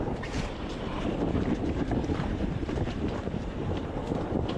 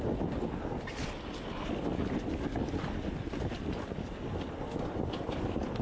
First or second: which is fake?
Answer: first